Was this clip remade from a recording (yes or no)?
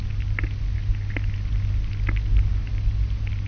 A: no